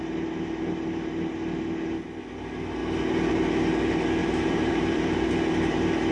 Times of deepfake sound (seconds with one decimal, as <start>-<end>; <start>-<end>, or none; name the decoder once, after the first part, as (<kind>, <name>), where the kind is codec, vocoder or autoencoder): 4.2-5.3 (vocoder, BigVGAN v2)